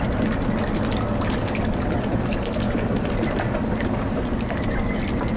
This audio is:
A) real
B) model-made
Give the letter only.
A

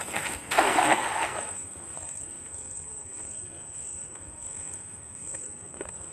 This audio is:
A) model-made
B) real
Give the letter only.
A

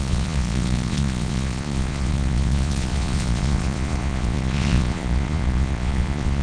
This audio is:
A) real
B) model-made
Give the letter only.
B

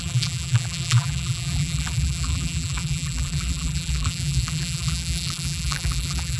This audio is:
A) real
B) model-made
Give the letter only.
B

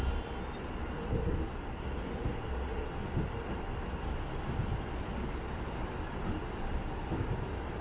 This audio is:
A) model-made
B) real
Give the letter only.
B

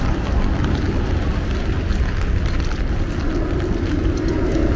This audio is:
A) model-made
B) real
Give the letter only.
B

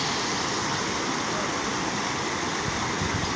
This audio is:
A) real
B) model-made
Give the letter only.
A